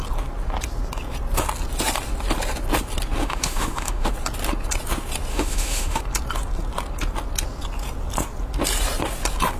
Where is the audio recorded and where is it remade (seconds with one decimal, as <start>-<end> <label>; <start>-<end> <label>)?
0.0-3.2 recorded; 3.2-4.1 remade; 4.1-5.3 recorded; 5.3-6.0 remade; 6.0-9.6 recorded